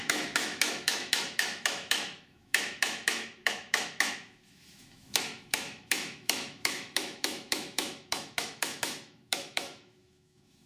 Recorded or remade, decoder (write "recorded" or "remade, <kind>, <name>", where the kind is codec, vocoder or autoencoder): remade, autoencoder, DAC-VAE